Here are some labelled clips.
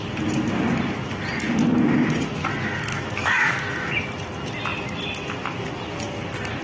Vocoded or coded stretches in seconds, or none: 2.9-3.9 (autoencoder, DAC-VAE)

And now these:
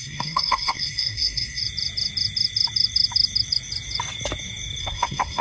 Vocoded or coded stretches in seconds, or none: 0.0-1.6 (codec, SNAC); 4.8-5.4

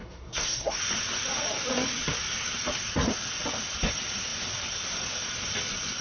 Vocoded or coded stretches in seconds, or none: 0.0-0.8 (codec, SNAC)

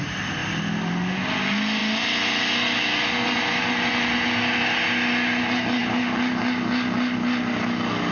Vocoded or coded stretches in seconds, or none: none